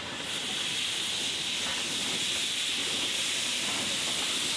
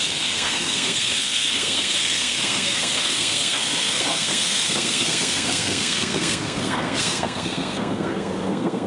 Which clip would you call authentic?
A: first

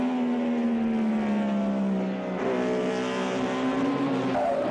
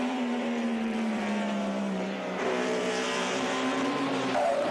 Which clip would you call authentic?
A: first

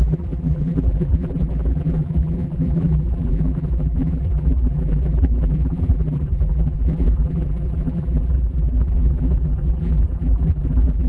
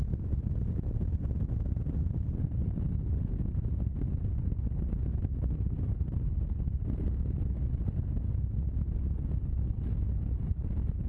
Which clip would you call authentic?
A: second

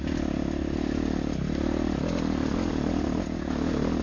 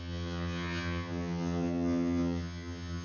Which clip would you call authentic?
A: first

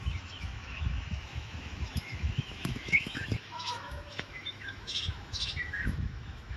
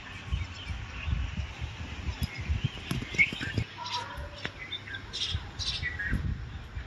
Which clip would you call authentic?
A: second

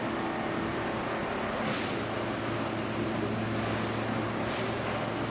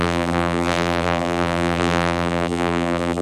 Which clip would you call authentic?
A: first